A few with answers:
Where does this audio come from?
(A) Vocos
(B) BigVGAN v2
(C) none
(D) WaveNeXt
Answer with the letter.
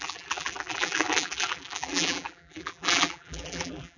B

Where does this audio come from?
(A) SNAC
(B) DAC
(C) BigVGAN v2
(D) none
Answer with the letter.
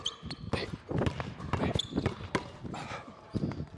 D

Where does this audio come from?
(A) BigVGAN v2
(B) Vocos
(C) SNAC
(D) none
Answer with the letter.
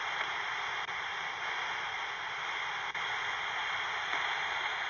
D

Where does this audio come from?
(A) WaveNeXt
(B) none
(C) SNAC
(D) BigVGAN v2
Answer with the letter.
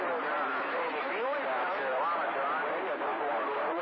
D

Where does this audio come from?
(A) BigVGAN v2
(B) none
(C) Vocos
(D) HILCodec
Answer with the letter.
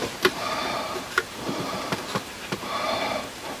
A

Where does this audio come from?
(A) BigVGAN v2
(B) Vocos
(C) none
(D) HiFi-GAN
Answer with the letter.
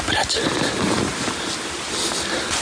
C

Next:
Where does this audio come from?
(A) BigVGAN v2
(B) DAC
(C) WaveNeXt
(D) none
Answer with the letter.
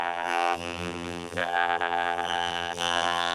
A